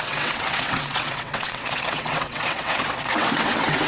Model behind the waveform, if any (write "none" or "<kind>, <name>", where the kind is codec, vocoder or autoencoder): vocoder, WaveNeXt